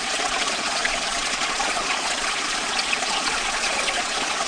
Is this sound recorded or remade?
remade